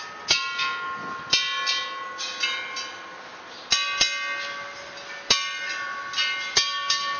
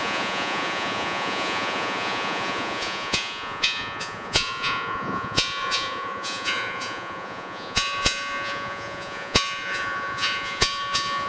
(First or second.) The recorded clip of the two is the first